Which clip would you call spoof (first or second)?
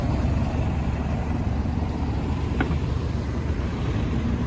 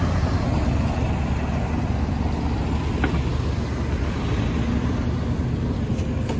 first